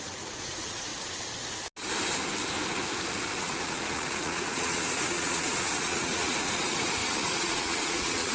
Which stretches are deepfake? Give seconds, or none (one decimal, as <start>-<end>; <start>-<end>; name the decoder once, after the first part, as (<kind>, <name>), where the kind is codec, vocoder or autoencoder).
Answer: 0.0-0.9 (vocoder, Vocos); 3.4-8.3